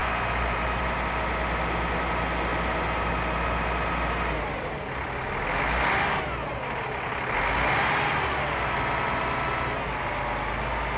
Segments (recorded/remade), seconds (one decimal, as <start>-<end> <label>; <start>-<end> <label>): 0.0-11.0 recorded